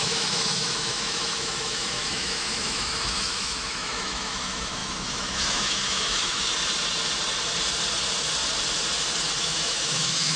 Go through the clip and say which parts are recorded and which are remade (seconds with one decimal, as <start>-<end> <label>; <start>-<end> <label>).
0.0-6.5 remade; 6.5-9.4 recorded; 9.4-10.4 remade